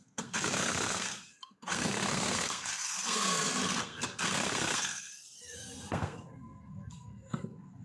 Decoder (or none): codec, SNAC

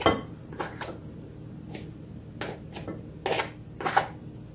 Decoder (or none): none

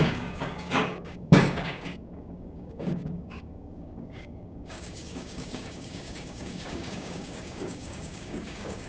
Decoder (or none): codec, DAC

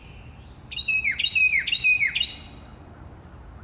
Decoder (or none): none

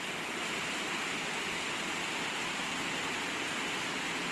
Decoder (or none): none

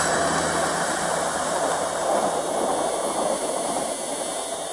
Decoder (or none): none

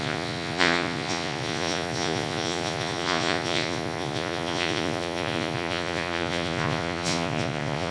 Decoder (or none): vocoder, Vocos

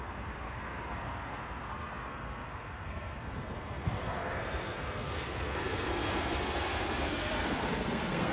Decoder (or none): codec, SNAC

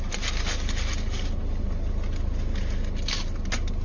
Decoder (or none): none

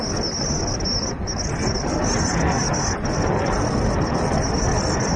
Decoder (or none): none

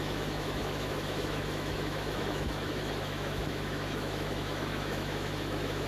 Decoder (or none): autoencoder, DAC-VAE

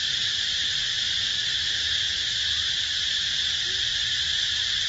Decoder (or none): none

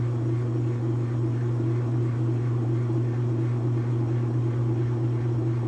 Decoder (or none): none